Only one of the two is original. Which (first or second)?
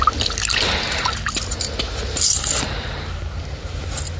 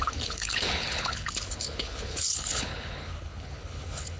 first